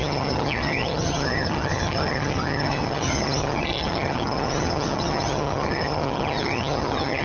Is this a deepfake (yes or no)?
yes